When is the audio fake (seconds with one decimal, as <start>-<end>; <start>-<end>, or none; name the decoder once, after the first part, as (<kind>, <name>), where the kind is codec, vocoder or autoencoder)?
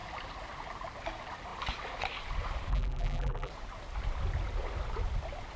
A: 2.7-3.5 (vocoder, BigVGAN v2)